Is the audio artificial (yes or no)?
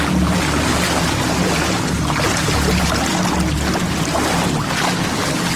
no